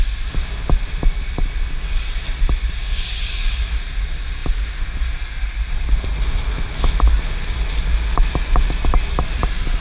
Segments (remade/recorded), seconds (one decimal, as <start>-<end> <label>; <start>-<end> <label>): 0.0-2.8 recorded; 2.8-3.7 remade; 3.7-9.8 recorded